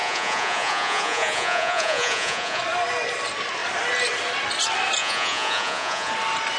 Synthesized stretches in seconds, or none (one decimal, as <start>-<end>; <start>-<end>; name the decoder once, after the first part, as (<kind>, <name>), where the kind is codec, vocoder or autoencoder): 0.0-2.6 (vocoder, Vocos); 5.0-6.1